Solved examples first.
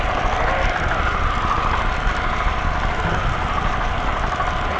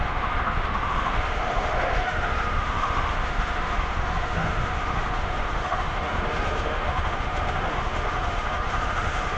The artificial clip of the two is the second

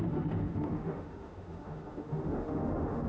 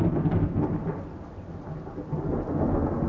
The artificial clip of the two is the first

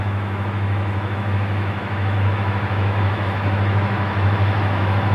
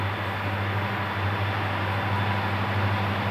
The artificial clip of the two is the first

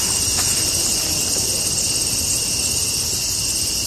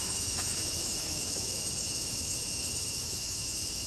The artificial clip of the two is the second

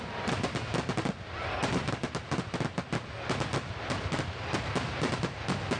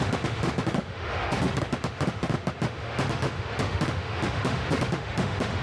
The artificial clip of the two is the second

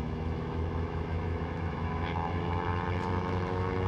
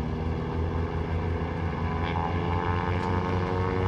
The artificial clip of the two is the first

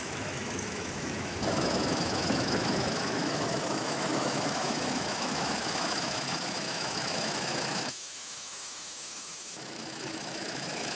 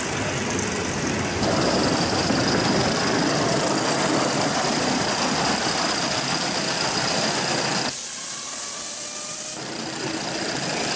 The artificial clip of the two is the first